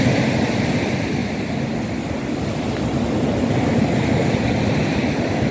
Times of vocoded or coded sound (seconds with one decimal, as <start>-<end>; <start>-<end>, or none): none